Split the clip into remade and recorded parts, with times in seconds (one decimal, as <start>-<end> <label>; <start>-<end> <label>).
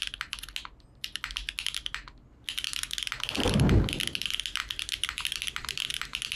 0.0-4.6 recorded; 4.6-5.9 remade; 5.9-6.4 recorded